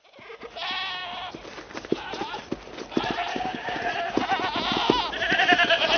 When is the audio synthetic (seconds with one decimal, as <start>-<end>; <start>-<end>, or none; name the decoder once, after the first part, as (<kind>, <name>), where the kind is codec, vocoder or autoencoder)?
3.3-3.8 (codec, DAC)